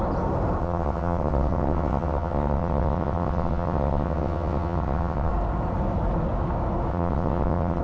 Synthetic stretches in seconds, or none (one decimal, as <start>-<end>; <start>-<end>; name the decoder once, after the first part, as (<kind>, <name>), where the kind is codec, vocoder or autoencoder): 0.6-5.3 (vocoder, WaveNeXt); 6.9-7.8